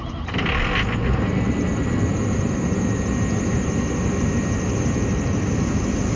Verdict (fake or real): real